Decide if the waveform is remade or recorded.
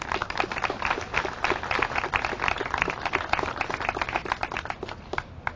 recorded